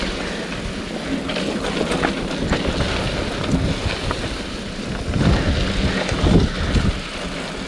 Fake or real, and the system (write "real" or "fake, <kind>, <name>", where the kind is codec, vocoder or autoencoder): real